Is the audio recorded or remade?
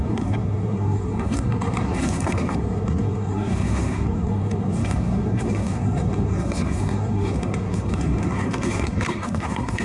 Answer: remade